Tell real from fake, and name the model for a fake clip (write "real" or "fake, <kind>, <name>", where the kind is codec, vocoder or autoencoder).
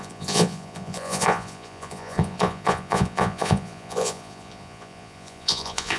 fake, vocoder, Vocos